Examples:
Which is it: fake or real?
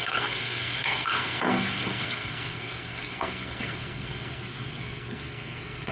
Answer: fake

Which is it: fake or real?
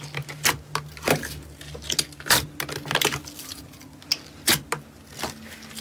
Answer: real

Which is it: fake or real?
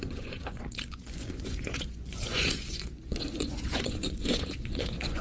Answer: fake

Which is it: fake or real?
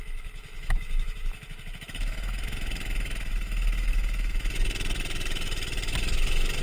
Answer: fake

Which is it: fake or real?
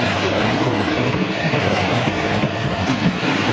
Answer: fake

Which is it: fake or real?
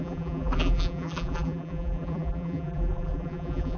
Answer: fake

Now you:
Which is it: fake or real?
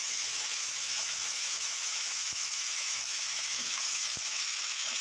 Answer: fake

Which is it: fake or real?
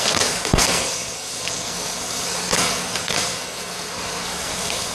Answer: fake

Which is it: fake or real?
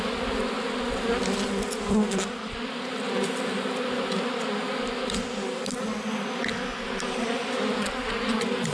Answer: real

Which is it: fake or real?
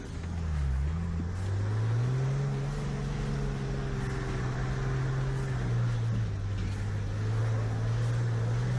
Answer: real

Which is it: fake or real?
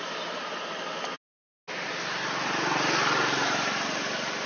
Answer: real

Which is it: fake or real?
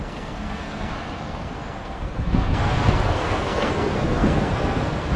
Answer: fake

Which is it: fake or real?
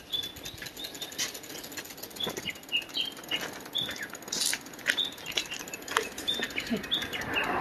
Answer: real